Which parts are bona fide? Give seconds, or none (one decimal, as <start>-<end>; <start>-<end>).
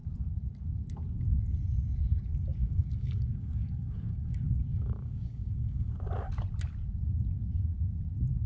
0.0-2.6; 5.9-8.5